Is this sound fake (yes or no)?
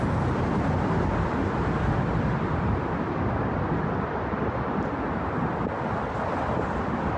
no